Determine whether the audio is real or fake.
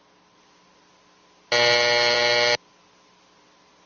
real